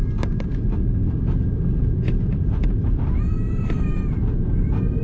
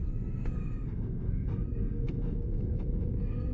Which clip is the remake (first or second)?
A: second